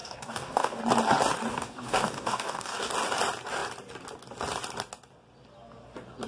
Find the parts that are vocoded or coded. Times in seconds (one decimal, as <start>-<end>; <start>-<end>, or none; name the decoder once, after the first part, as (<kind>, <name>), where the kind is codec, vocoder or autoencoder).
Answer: 0.0-0.8 (codec, DAC); 1.5-2.9